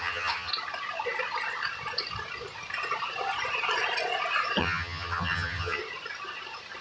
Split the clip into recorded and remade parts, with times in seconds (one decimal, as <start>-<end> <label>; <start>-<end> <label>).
0.0-0.5 remade; 0.5-4.6 recorded; 4.6-5.8 remade; 5.8-6.8 recorded